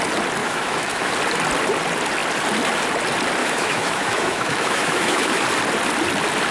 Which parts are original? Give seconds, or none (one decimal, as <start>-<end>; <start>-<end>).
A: 0.0-0.4; 1.1-3.4; 5.4-6.5